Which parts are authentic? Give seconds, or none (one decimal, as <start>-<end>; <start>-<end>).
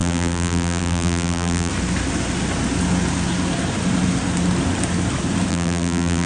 1.7-5.5